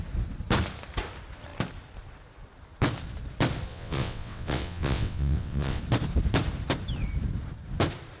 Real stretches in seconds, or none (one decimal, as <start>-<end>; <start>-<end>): 0.0-3.7; 5.8-8.2